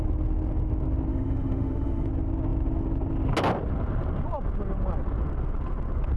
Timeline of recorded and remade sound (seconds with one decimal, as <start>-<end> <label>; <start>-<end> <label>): 0.0-1.1 recorded; 1.1-2.1 remade; 2.1-6.2 recorded